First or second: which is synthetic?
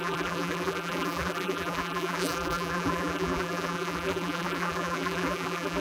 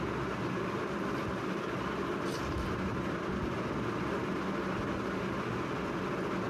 first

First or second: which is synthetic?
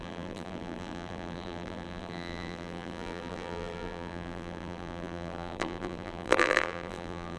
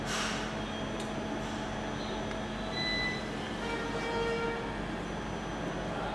first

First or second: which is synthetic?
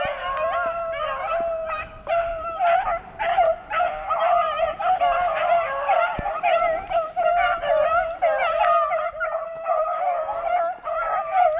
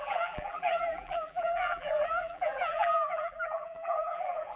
second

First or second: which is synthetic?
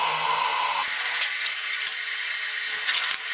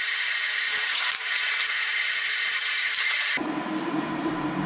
second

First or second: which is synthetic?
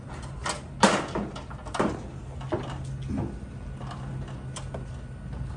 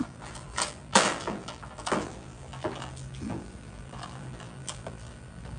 second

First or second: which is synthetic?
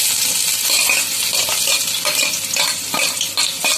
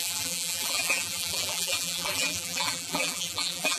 second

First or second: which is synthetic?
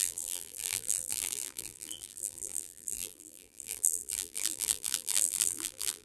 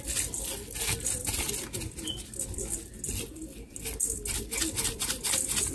first